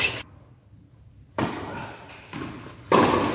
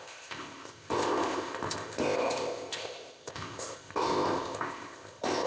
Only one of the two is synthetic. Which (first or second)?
second